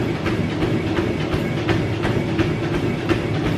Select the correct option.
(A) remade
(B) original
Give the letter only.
B